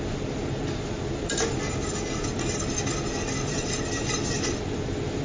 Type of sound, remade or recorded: recorded